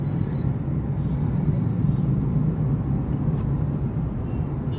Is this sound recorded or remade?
recorded